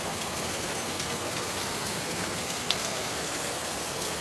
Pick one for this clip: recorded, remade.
remade